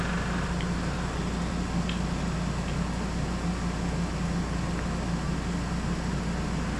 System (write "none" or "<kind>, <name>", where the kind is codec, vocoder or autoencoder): none